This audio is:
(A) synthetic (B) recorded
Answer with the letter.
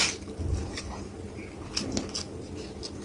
B